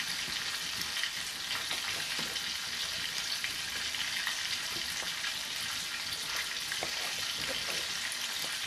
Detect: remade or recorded recorded